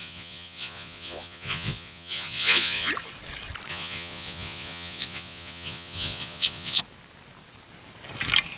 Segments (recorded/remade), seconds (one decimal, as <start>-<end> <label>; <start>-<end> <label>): 0.0-2.9 remade; 2.9-3.7 recorded; 3.7-6.8 remade; 6.8-8.6 recorded